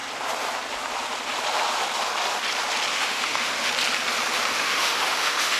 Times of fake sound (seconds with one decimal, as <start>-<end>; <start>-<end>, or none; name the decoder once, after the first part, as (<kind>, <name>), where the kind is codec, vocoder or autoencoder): 2.9-3.7 (autoencoder, DAC-VAE); 4.5-5.6

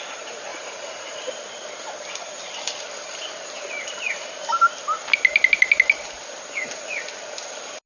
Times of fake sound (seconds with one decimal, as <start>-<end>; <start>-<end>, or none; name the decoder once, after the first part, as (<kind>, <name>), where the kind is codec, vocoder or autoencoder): 0.5-1.3 (vocoder, Vocos)

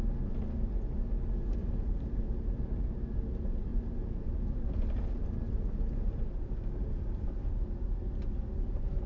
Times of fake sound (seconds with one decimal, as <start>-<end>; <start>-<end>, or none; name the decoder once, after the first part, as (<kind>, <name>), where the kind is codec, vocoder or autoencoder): 1.6-2.4 (vocoder, BigVGAN v2); 3.7-7.5

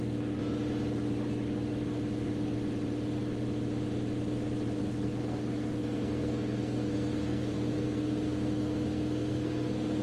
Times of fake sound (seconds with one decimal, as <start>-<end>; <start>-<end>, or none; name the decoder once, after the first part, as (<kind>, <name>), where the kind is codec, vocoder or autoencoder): 0.0-0.4 (codec, SNAC); 4.8-10.0

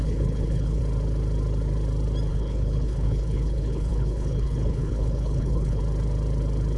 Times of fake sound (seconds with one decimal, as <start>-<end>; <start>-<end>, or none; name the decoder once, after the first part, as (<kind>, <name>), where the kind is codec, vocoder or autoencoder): 0.0-0.8 (codec, HILCodec); 2.3-5.8

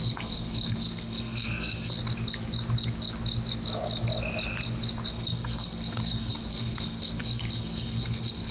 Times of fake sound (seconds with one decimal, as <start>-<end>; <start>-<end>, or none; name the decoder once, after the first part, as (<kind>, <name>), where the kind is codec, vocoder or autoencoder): 0.0-2.0 (codec, SNAC); 5.1-8.5